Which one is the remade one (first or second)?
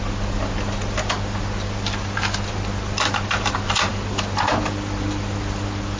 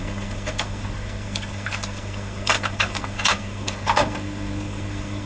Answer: second